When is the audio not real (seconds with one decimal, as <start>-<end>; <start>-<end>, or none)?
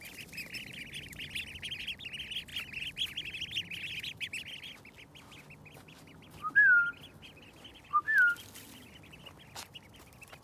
none